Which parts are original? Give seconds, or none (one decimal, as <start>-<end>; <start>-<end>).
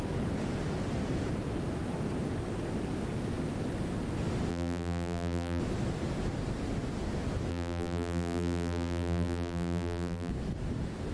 0.0-4.5; 5.6-7.5; 10.3-11.1